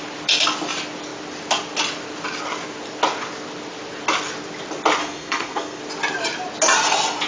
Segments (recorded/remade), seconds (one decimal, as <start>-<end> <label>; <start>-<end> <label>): 0.0-5.0 recorded; 5.0-5.8 remade; 5.8-7.3 recorded